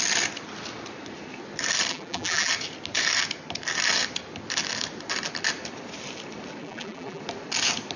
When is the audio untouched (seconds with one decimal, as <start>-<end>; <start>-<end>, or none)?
0.0-1.9; 2.5-6.6; 7.2-8.0